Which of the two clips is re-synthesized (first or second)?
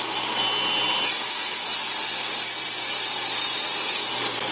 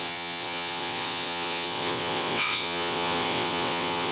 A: second